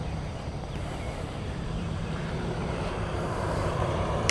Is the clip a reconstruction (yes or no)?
yes